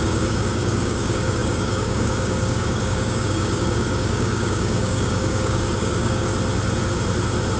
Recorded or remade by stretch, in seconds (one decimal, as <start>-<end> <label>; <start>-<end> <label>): 0.0-6.3 remade; 6.3-7.6 recorded